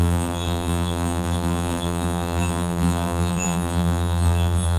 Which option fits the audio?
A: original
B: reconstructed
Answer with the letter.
B